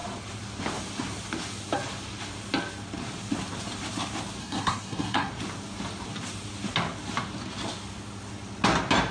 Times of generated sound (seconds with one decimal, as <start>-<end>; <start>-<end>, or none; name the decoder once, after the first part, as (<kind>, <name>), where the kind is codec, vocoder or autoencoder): 4.4-5.3 (codec, SNAC)